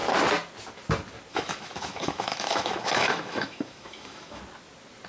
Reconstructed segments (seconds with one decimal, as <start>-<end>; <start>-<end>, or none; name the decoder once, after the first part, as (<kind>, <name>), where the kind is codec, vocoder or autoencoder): 1.3-4.4 (autoencoder, DAC-VAE)